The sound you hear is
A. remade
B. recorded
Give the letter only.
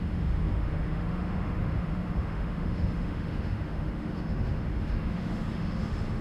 A